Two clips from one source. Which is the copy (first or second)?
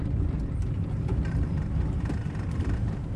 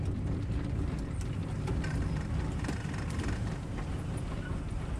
first